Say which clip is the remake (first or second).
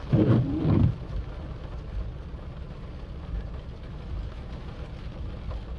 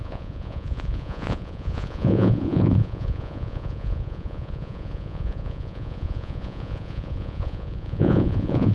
second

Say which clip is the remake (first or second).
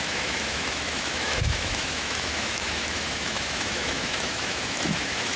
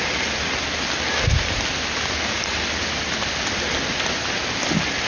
first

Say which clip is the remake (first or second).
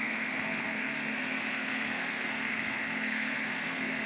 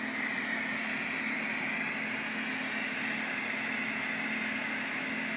first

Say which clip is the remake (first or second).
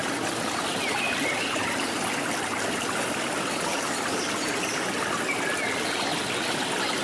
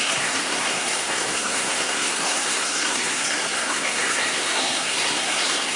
second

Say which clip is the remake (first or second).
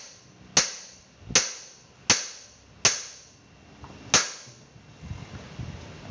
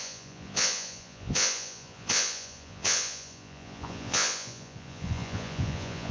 second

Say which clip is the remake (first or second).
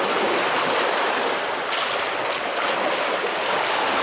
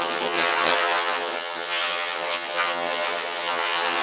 second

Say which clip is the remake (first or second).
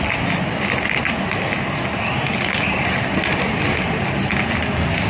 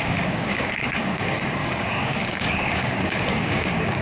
second